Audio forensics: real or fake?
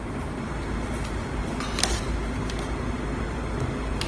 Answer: real